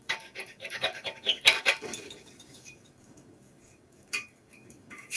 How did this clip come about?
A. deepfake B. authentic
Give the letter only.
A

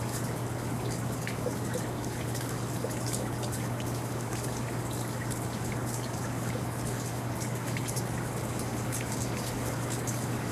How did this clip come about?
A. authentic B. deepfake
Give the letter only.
B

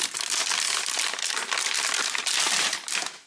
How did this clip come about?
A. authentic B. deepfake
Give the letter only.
A